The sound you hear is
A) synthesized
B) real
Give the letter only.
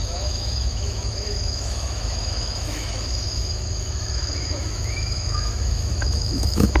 A